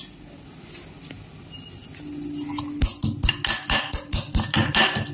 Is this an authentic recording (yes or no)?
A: yes